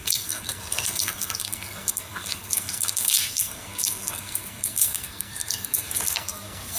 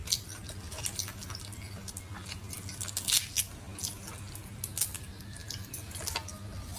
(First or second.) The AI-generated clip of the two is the first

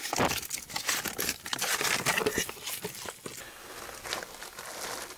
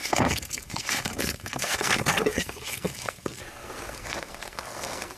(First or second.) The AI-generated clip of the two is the second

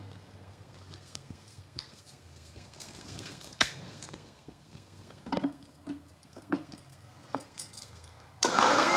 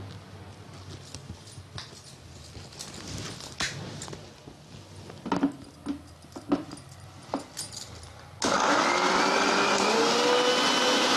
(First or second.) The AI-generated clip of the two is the first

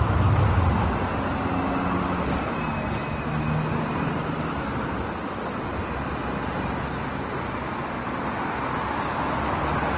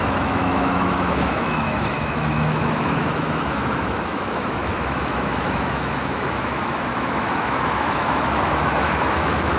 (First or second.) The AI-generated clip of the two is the second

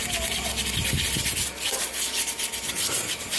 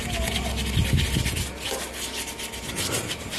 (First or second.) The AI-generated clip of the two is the first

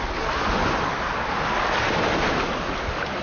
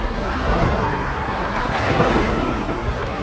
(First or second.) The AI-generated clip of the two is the second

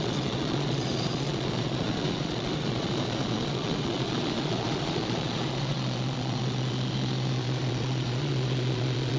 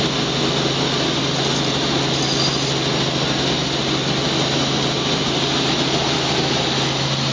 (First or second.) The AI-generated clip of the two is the first